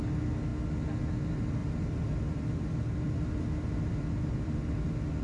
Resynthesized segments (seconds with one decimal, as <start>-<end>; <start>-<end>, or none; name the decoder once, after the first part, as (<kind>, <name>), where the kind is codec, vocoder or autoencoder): 1.6-4.7 (vocoder, BigVGAN v2)